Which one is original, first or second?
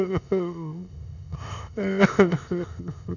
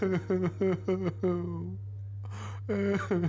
second